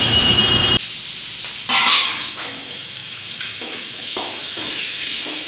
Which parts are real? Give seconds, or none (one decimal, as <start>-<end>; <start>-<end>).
0.4-1.8